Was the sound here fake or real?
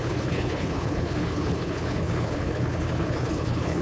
fake